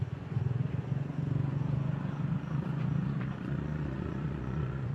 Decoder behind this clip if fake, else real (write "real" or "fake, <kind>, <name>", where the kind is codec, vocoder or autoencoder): fake, vocoder, Vocos